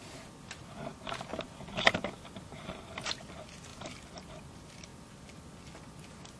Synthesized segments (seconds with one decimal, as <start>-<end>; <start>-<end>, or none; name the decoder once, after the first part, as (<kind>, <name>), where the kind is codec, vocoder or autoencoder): none